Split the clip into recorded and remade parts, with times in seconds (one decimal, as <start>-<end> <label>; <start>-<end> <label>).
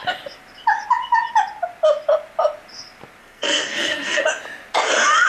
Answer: 0.0-3.2 recorded; 3.2-4.3 remade; 4.3-5.3 recorded